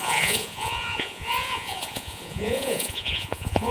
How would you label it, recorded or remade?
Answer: remade